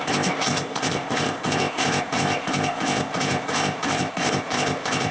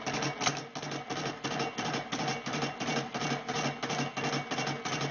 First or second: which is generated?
first